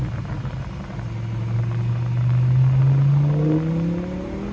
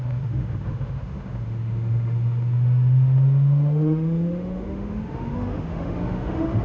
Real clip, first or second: first